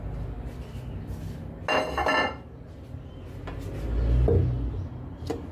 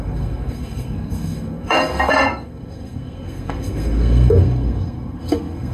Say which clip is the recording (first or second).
first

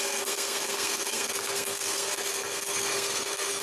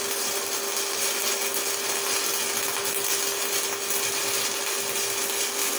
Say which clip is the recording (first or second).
second